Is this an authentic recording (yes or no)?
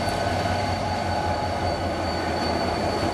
yes